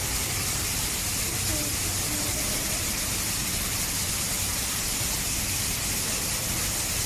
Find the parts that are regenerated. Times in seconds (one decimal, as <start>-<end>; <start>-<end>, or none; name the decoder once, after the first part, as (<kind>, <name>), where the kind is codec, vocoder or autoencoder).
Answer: none